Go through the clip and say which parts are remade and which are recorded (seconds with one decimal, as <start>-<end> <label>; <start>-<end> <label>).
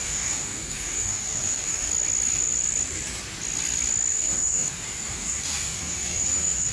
0.0-1.9 remade; 1.9-4.1 recorded; 4.1-6.7 remade